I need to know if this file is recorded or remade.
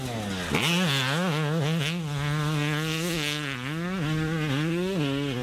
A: recorded